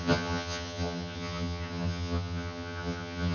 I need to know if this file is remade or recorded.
remade